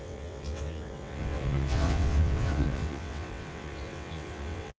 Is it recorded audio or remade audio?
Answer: remade